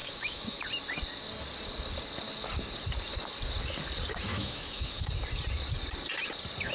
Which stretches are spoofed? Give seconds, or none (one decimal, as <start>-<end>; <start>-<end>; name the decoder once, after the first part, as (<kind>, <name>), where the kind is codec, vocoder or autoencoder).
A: 0.0-0.6 (autoencoder, DAC-VAE); 4.3-5.1

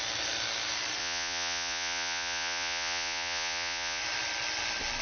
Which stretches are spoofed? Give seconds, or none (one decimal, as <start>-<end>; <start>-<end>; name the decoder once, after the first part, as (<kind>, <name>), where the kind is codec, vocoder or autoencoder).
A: 1.0-4.0 (vocoder, Vocos)

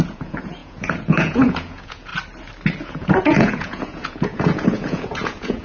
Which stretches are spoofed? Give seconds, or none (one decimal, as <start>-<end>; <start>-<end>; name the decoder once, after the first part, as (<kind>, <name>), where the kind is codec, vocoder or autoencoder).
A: 0.0-2.1 (vocoder, Vocos); 2.9-5.6